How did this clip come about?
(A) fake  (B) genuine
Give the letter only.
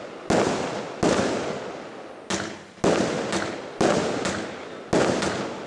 B